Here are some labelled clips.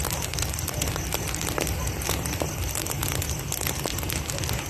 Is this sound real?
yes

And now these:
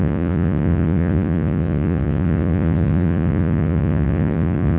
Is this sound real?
no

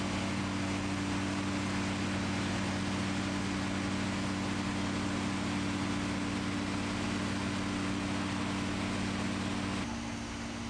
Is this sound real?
yes